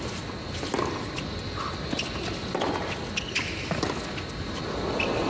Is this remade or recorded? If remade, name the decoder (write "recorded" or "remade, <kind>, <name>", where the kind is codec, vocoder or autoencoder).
recorded